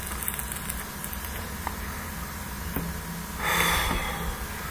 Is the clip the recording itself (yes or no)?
yes